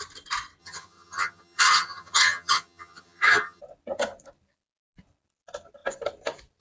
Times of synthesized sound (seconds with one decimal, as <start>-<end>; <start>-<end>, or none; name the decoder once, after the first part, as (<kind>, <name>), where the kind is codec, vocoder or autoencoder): 0.6-3.6 (vocoder, HiFi-GAN)